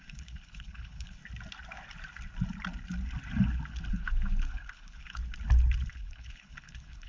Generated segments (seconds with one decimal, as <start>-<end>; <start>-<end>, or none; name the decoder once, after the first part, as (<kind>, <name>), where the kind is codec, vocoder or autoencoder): 0.0-1.2 (codec, HILCodec); 3.9-5.2; 5.9-7.1